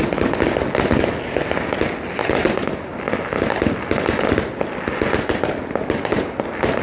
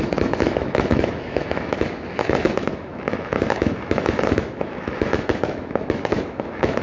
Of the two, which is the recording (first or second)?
first